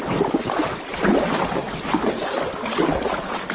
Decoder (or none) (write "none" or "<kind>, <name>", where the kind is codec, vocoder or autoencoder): none